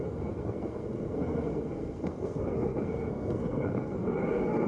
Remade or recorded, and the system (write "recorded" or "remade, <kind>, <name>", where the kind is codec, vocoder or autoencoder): remade, codec, SNAC